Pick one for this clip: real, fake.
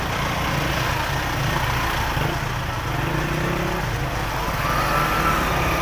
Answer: real